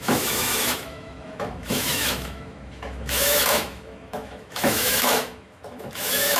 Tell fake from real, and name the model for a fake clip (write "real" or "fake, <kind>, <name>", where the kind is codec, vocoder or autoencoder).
fake, autoencoder, DAC-VAE